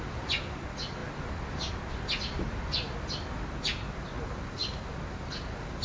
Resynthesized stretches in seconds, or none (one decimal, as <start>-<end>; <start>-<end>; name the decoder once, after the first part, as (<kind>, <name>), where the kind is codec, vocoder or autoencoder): 1.0-1.7 (vocoder, BigVGAN v2)